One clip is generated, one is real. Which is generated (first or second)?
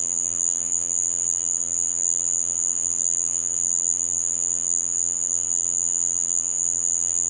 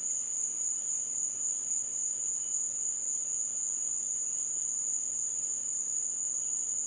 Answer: first